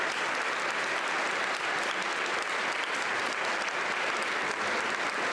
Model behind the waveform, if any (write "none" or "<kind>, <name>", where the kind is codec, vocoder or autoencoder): none